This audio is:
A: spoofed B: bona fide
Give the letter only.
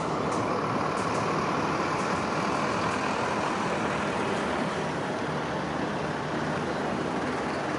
B